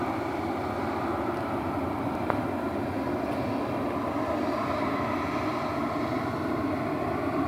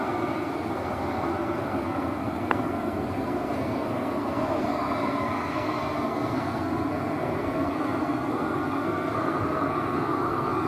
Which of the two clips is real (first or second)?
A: first